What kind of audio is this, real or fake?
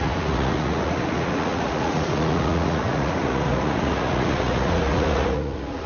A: fake